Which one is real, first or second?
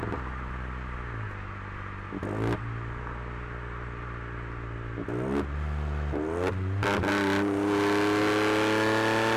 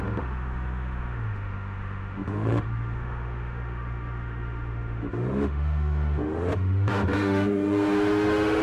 first